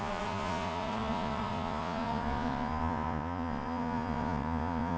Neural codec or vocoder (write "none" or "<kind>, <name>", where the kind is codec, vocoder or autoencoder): vocoder, Vocos